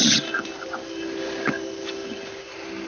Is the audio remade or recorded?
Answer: recorded